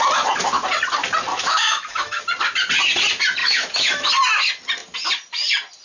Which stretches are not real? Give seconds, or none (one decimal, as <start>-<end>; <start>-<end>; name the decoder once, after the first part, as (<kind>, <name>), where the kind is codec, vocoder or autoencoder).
1.3-2.2 (autoencoder, DAC-VAE); 3.4-4.1